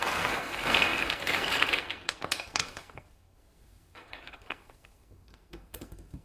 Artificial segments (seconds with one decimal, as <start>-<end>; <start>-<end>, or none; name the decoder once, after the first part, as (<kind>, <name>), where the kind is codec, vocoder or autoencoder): 0.0-6.2 (codec, SNAC)